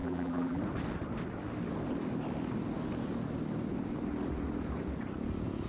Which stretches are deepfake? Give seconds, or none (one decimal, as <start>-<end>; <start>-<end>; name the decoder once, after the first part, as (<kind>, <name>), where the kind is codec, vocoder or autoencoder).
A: 0.0-0.6 (vocoder, BigVGAN v2)